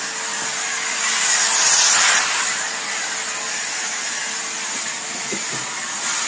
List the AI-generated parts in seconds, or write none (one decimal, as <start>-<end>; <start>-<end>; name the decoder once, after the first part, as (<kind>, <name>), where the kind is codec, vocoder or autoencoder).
none